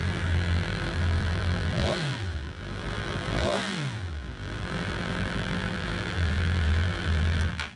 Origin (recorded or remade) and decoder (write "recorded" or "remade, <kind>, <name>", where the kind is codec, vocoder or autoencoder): remade, vocoder, BigVGAN v2